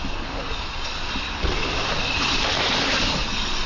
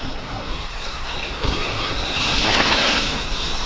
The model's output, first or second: second